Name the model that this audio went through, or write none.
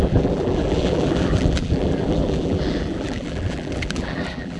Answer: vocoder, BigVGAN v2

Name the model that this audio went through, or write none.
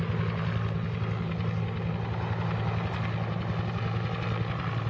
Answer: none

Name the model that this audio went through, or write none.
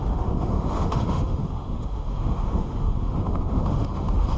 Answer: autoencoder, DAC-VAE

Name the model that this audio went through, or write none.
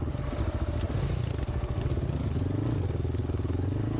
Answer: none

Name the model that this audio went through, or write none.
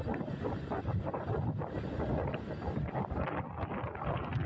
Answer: none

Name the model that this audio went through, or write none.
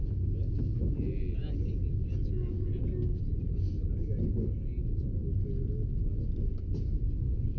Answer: none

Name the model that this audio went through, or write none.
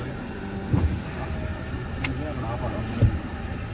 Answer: none